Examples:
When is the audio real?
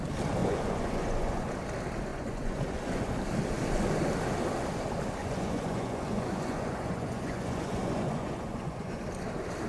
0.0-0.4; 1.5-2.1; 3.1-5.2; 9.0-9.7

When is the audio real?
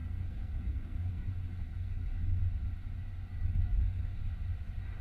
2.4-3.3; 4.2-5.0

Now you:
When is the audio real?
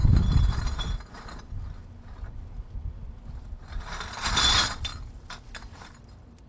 0.0-6.5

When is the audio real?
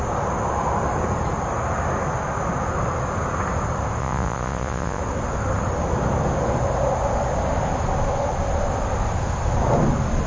0.0-4.0; 5.0-10.3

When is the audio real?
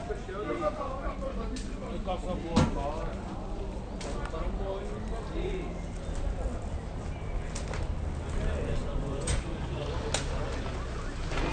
0.0-8.8; 9.8-11.5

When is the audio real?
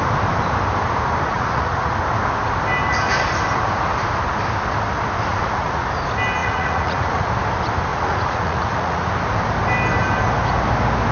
0.0-1.3; 1.9-5.3; 5.9-6.4; 7.3-7.9; 9.1-11.1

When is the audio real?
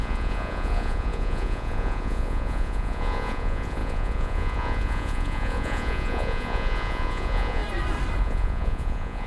7.6-8.2